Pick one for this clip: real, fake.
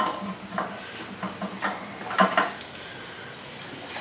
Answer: real